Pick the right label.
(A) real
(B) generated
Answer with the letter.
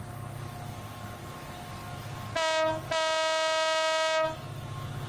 A